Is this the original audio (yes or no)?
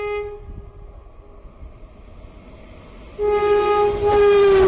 yes